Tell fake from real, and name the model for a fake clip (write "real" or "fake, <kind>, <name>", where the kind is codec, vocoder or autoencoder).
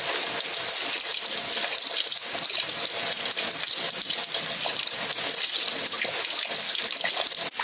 real